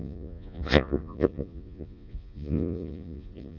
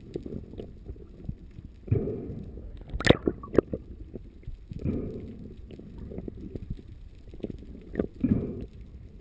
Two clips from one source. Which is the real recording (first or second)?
second